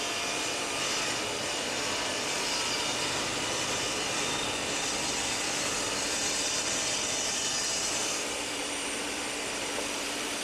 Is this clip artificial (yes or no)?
yes